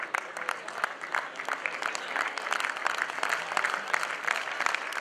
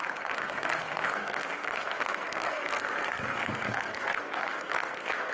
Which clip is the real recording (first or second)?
first